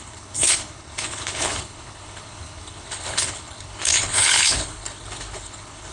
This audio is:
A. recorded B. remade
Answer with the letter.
B